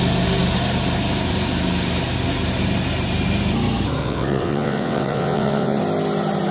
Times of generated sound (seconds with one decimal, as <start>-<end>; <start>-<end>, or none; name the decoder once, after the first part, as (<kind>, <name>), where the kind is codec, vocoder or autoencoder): 4.0-5.8 (vocoder, WaveNeXt)